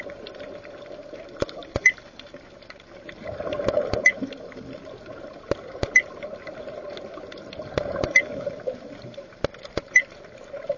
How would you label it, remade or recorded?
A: remade